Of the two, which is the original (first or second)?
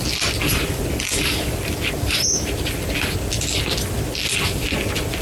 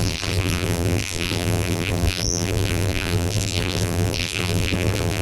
first